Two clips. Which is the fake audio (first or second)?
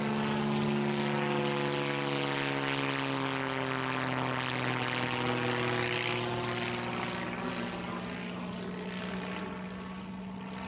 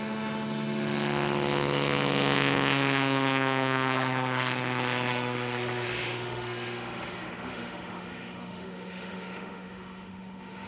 second